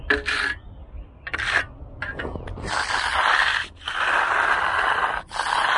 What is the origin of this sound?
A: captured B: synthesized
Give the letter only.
A